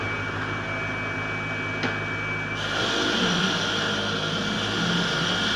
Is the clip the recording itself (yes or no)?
yes